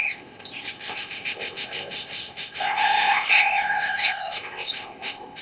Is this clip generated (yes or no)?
yes